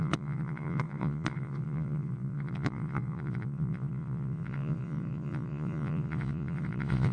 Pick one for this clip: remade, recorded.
remade